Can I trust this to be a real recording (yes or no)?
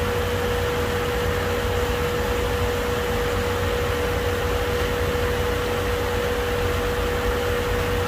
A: yes